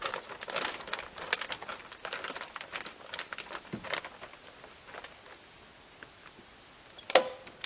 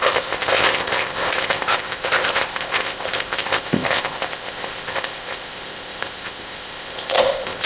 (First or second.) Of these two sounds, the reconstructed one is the second